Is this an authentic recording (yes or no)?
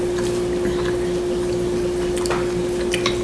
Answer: yes